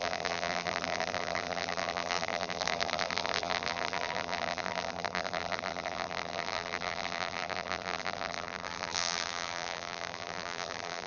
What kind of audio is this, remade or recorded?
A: remade